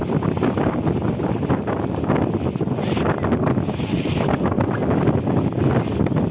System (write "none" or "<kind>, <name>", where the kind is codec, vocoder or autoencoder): none